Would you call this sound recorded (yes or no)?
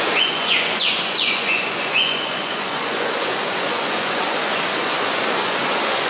no